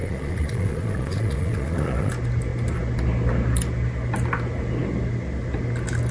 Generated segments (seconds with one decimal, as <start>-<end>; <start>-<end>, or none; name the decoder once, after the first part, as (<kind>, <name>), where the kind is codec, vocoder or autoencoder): 0.0-2.1 (vocoder, Vocos)

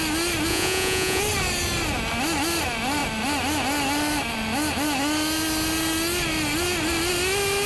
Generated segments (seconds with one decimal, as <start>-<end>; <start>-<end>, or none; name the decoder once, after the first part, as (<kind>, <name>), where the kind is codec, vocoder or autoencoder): 0.5-1.2 (vocoder, Vocos)

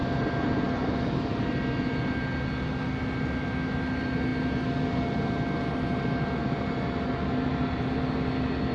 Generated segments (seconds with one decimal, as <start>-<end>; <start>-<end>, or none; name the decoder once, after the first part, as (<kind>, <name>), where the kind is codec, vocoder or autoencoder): none

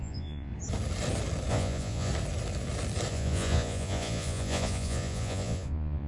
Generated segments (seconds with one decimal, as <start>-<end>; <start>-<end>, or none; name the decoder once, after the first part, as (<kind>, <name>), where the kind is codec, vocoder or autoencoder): 0.0-0.5 (vocoder, Vocos); 1.5-2.1; 3.1-6.1

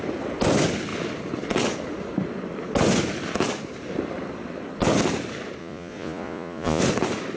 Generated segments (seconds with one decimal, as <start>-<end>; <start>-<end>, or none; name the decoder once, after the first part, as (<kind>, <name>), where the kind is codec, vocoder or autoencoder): 5.6-6.8 (vocoder, Vocos)